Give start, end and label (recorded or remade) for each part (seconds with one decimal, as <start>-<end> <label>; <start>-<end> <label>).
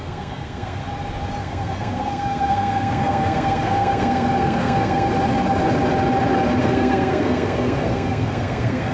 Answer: 0.0-0.8 remade; 0.8-1.4 recorded; 1.4-5.1 remade; 5.1-6.6 recorded; 6.6-8.9 remade